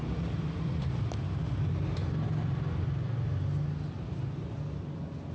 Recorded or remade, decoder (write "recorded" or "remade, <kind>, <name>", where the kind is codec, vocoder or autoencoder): recorded